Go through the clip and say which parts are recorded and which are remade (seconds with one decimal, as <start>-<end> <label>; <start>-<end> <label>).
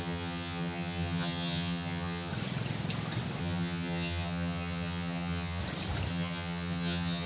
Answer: 0.0-2.3 remade; 2.3-3.4 recorded; 3.4-5.6 remade; 5.6-6.1 recorded; 6.1-7.3 remade